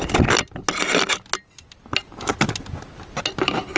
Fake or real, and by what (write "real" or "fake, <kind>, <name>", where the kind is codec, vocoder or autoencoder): real